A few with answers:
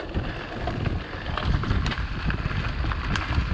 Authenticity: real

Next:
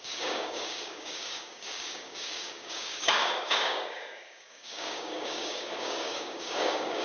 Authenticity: fake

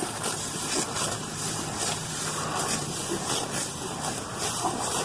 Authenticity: real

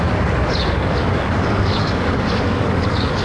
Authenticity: fake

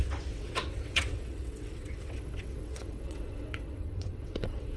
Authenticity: fake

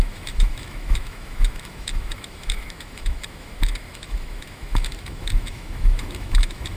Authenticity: fake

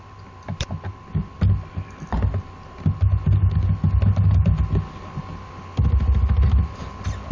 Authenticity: real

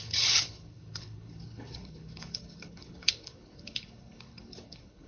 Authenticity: fake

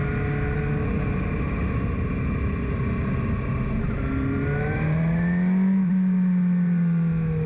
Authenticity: real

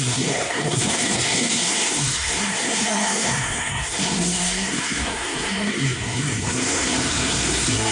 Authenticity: fake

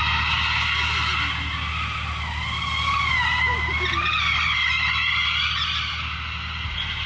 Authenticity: real